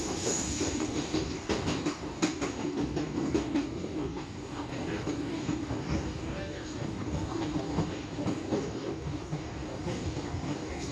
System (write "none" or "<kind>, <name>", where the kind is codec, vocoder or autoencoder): codec, DAC